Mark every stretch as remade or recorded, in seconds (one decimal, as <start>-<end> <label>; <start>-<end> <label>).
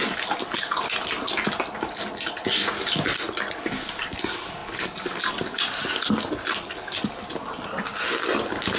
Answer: 0.0-8.8 recorded